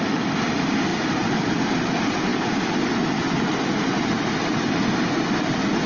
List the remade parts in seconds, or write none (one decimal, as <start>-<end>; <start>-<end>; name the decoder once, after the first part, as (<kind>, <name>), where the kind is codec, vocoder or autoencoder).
none